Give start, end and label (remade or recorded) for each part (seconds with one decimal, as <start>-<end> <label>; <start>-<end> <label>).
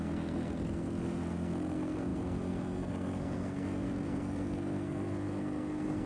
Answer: 0.0-6.1 remade